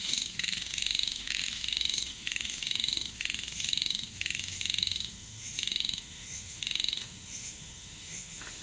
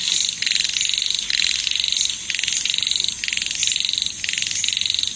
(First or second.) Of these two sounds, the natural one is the second